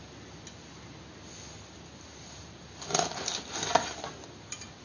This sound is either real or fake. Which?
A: real